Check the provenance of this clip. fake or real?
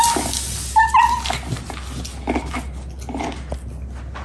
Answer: real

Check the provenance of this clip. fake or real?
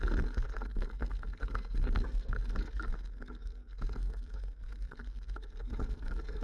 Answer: fake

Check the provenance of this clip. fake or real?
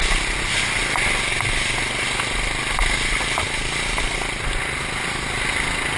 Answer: real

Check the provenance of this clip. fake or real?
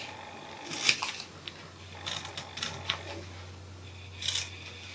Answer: real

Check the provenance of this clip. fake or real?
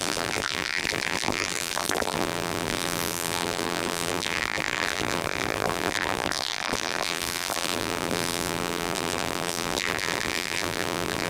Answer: fake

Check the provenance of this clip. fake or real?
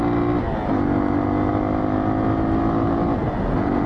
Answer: real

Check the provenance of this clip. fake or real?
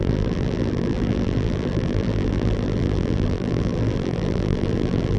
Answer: fake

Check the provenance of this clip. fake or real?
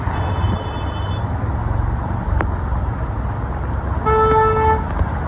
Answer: real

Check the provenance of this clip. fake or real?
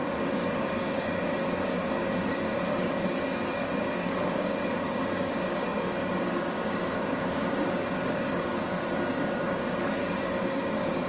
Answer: fake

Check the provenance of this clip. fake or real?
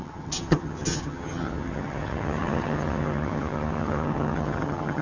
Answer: fake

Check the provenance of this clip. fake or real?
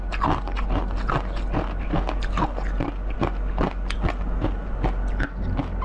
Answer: real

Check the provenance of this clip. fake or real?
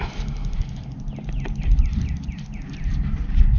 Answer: real